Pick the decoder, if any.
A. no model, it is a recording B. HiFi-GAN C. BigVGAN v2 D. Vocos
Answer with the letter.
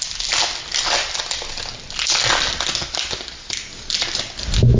A